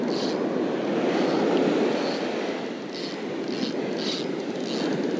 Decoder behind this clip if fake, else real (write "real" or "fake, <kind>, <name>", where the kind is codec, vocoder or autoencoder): real